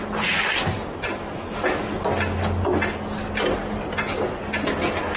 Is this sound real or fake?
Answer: real